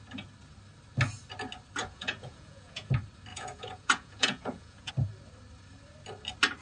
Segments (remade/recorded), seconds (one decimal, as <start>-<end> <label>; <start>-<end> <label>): 0.0-1.8 recorded; 1.8-2.9 remade; 2.9-3.3 recorded; 3.3-4.9 remade; 4.9-6.6 recorded